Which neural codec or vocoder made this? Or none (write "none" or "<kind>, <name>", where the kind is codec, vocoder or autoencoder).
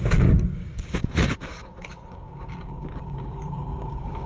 codec, DAC